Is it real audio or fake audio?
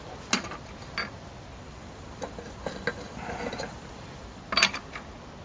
real